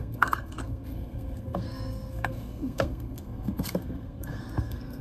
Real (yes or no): no